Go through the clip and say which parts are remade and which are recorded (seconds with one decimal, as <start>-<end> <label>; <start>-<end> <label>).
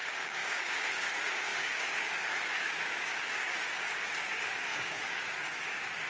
0.0-6.1 remade